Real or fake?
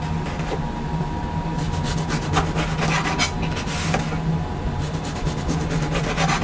real